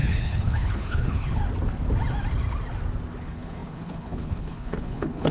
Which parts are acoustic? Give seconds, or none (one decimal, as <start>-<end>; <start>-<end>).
1.4-3.2